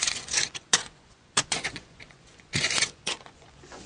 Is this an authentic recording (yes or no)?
no